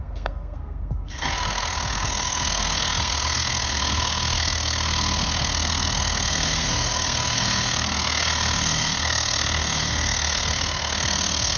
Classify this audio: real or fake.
fake